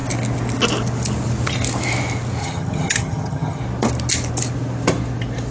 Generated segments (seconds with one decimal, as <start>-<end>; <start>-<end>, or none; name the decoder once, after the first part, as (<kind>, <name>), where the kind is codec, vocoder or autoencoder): 2.4-3.6 (vocoder, HiFi-GAN)